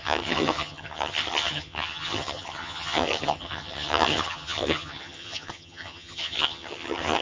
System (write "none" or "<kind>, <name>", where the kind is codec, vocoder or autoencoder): vocoder, HiFi-GAN